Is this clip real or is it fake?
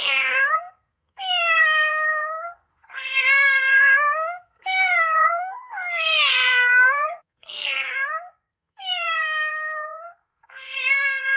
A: fake